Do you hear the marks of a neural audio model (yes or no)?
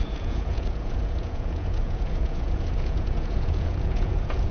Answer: yes